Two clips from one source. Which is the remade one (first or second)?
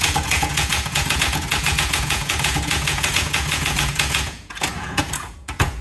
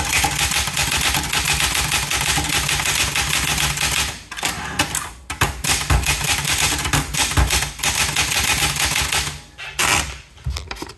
first